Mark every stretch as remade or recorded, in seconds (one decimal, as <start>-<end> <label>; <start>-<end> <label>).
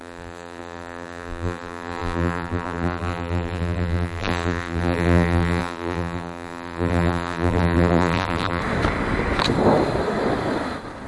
0.0-8.6 remade; 8.6-11.1 recorded